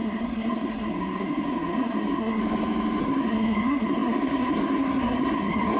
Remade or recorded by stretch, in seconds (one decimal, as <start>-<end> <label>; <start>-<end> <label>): 0.0-2.4 remade; 2.4-3.0 recorded; 3.0-5.8 remade

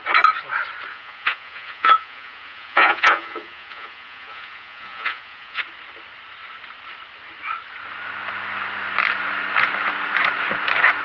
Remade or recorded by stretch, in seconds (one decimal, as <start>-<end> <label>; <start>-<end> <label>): 0.0-0.9 recorded; 0.9-5.6 remade; 5.6-11.0 recorded

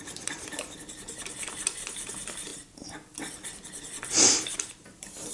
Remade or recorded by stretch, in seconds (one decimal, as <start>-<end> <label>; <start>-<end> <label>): 0.0-2.5 remade; 2.5-4.1 recorded; 4.1-5.3 remade

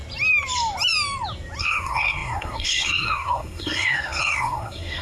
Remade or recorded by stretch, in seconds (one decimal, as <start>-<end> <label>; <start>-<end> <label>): 0.0-1.6 recorded; 1.6-5.0 remade

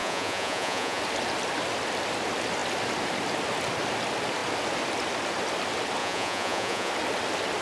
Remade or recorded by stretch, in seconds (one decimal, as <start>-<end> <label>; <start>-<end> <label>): 0.0-1.0 remade; 1.0-6.0 recorded; 6.0-6.9 remade; 6.9-7.6 recorded

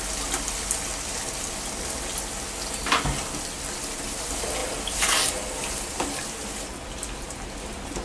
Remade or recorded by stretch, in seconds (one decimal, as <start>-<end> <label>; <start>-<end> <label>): 0.0-8.0 recorded

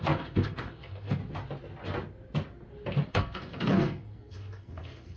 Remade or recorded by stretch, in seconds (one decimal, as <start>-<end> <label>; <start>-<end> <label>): 0.0-1.2 remade; 1.2-3.1 recorded; 3.1-5.2 remade

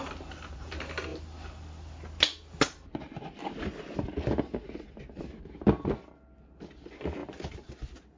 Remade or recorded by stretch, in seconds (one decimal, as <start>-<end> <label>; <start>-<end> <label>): 0.0-8.2 recorded